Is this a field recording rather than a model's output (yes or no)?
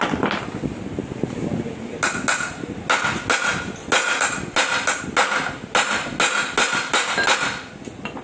yes